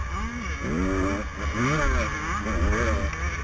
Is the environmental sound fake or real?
real